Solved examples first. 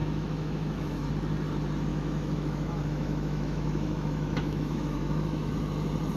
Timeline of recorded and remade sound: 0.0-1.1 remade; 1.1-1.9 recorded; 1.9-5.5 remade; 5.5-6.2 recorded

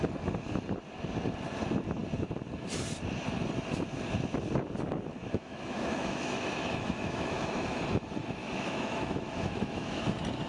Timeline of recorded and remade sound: 0.0-5.2 recorded; 5.2-7.8 remade; 7.8-8.4 recorded; 8.4-10.0 remade; 10.0-10.5 recorded

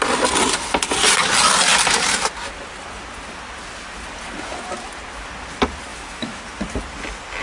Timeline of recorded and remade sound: 0.0-5.9 recorded; 5.9-6.4 remade; 6.4-7.4 recorded

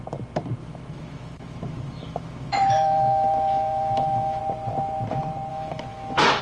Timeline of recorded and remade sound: 0.0-0.6 recorded; 0.6-4.4 remade; 4.4-5.5 recorded; 5.5-6.4 remade

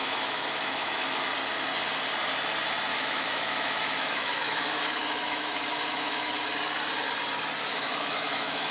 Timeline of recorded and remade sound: 0.0-1.2 remade; 1.2-2.9 recorded; 2.9-6.5 remade; 6.5-7.7 recorded; 7.7-8.7 remade

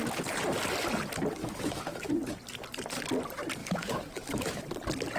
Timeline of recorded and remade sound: 0.0-1.4 recorded; 1.4-2.1 remade; 2.1-3.6 recorded; 3.6-4.6 remade; 4.6-5.2 recorded

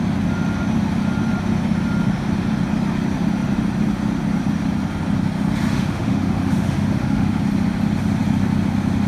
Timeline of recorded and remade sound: 0.0-5.7 recorded; 5.7-7.4 remade; 7.4-9.1 recorded